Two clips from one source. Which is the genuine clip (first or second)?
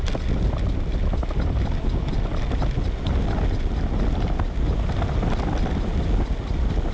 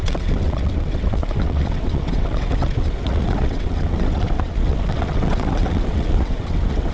first